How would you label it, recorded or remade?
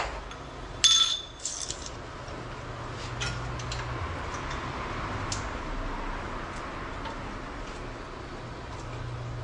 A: recorded